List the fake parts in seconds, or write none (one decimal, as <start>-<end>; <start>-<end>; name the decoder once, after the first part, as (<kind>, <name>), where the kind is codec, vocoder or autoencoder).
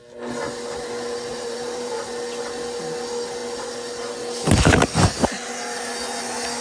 1.3-2.0 (vocoder, BigVGAN v2)